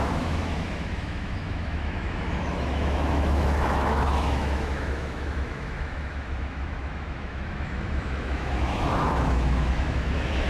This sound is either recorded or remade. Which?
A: remade